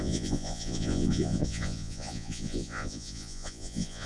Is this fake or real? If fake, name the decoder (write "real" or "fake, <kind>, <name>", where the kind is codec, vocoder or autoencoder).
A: fake, vocoder, Vocos